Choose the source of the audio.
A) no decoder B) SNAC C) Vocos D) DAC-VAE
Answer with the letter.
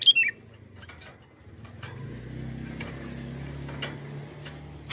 A